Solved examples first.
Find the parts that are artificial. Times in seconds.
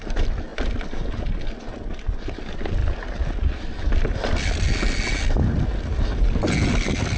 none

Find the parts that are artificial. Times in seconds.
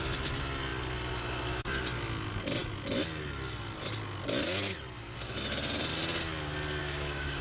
6.8-7.4 (codec, DAC)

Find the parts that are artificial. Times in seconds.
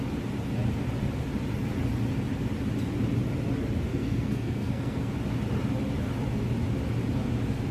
3.9-5.1 (codec, SNAC)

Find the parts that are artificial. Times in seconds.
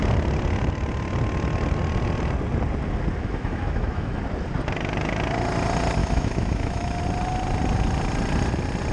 3.2-4.2 (autoencoder, DAC-VAE); 6.0-7.0